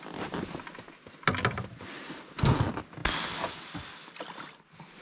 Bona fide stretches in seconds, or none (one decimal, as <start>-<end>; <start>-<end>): 0.0-5.0